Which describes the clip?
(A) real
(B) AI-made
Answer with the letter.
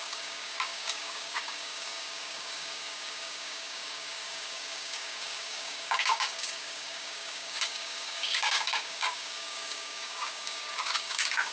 B